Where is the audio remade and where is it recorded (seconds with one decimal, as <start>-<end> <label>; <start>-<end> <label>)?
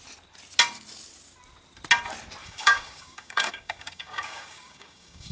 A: 0.0-2.4 recorded; 2.4-5.3 remade